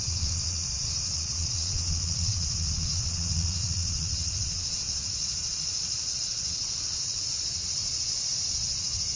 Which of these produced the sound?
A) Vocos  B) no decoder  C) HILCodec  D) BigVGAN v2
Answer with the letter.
A